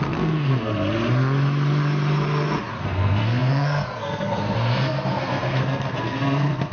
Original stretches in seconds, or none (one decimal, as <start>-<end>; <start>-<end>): 0.7-2.8